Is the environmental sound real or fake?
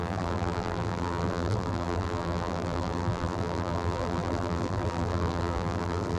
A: fake